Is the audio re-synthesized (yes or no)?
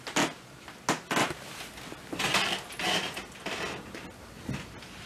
no